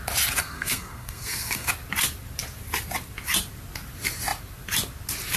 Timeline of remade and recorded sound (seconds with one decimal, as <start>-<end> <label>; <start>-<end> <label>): 0.0-0.4 recorded; 0.4-1.7 remade; 1.7-5.4 recorded